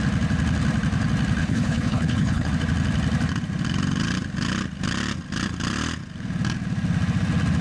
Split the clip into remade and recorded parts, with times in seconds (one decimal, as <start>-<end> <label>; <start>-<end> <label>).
0.0-1.4 recorded; 1.4-2.5 remade; 2.5-7.6 recorded